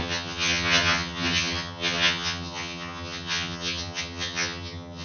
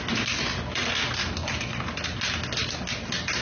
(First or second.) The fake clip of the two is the first